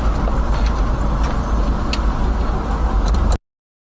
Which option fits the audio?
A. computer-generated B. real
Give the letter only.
B